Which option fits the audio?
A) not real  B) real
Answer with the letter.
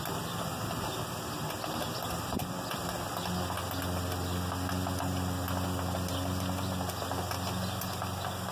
B